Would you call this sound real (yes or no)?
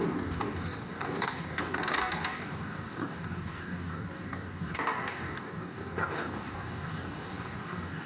no